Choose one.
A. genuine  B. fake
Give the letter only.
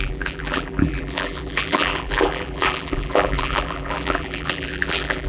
B